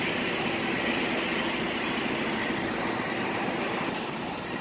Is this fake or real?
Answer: real